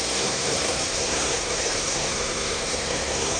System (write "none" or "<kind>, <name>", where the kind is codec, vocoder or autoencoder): codec, SNAC